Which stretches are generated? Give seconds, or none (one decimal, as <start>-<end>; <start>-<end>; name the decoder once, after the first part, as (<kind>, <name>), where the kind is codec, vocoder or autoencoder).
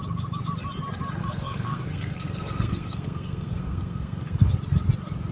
1.2-4.4 (codec, SNAC)